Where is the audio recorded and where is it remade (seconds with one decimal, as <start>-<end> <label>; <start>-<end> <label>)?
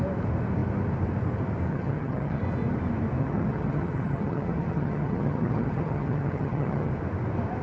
0.0-1.7 recorded; 1.7-2.4 remade; 2.4-3.2 recorded; 3.2-6.9 remade; 6.9-7.6 recorded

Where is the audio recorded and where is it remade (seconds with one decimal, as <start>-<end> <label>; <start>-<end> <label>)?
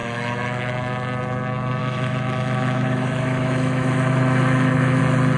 0.0-0.7 remade; 0.7-1.8 recorded; 1.8-5.0 remade; 5.0-5.4 recorded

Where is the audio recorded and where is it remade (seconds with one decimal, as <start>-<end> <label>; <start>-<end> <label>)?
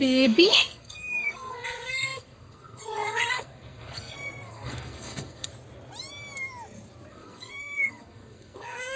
0.0-5.5 remade; 5.5-7.1 recorded; 7.1-9.0 remade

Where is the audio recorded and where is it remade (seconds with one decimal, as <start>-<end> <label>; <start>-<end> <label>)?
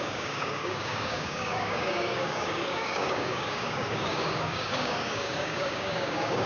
0.0-6.5 remade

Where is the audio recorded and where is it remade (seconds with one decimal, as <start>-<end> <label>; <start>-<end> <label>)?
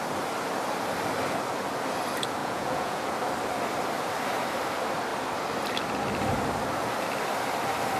0.0-2.4 recorded; 2.4-3.0 remade; 3.0-8.0 recorded